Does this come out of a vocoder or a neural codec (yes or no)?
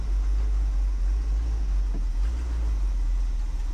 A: no